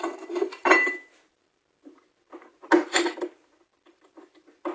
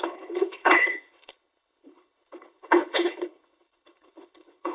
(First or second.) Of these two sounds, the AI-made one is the second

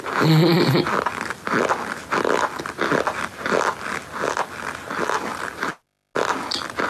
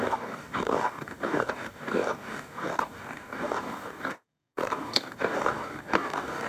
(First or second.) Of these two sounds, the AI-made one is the second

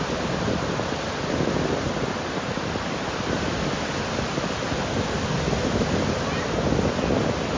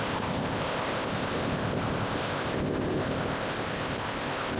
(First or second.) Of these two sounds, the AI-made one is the second